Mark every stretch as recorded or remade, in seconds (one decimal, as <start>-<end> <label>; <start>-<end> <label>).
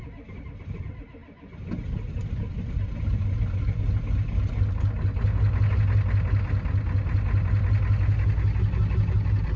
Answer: 0.0-9.6 recorded